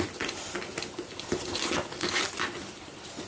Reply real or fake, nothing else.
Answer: real